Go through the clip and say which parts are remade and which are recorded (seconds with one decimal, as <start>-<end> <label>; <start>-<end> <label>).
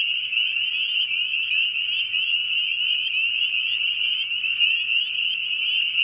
0.0-6.0 recorded